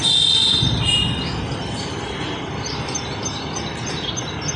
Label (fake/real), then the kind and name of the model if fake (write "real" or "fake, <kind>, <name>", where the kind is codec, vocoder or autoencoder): real